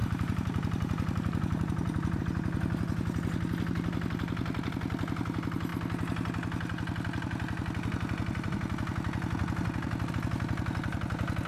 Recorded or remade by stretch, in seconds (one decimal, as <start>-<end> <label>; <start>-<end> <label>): 0.0-2.2 remade; 2.2-11.5 recorded